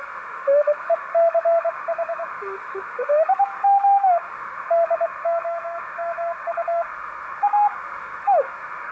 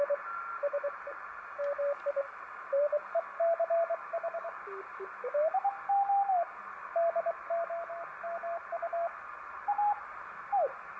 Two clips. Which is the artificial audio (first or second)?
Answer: first